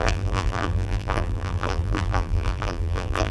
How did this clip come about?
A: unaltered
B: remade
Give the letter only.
B